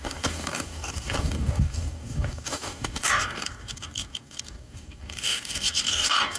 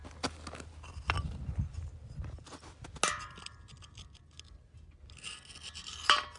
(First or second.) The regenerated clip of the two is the first